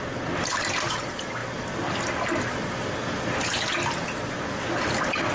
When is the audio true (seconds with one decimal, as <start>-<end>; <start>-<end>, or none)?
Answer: 0.0-5.3